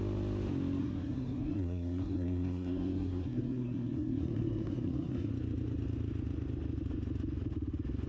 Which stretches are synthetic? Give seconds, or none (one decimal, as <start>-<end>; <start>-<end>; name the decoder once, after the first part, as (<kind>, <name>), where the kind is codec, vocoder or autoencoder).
0.8-5.3 (codec, SNAC)